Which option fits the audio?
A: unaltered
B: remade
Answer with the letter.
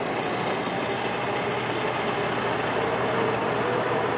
A